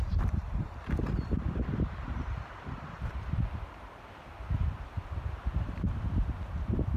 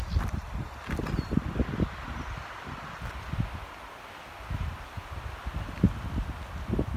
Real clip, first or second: second